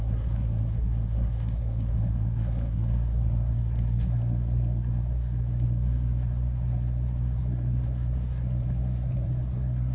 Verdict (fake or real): fake